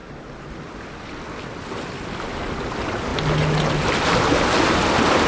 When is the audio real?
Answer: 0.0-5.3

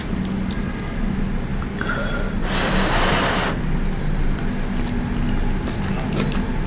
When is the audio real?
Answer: 0.0-6.7

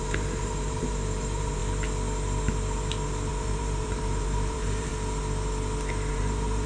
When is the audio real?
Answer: 1.6-3.3; 4.9-6.1